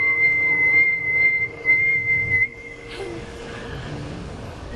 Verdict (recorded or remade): remade